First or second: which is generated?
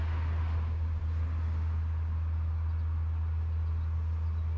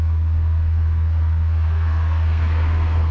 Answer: second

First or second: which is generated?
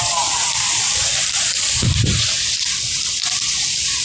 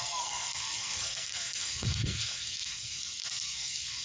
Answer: second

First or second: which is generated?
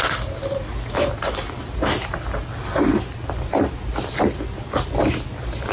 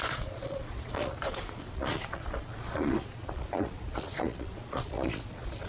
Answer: second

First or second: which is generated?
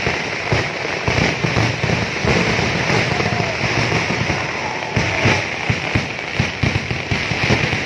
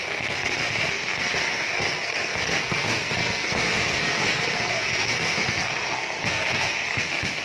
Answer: second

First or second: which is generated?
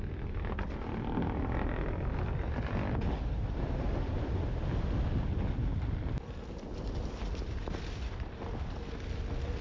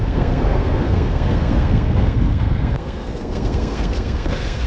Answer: second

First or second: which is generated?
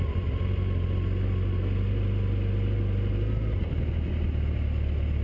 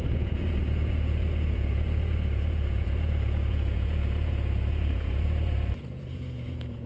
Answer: second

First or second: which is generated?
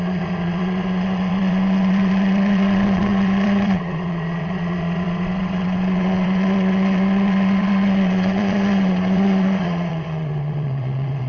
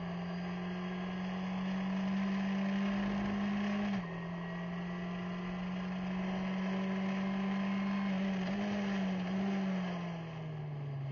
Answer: first